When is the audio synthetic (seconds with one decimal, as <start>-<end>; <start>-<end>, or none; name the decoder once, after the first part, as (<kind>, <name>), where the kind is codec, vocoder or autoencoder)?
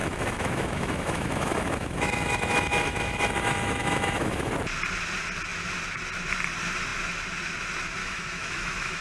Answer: 0.0-4.5 (autoencoder, DAC-VAE); 8.0-9.0